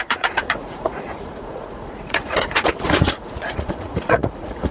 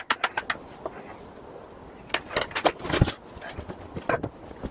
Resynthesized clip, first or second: first